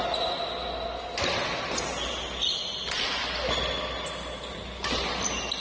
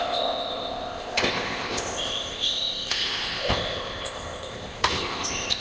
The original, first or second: first